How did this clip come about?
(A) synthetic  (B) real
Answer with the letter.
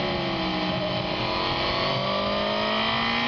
B